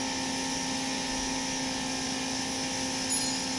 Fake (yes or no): no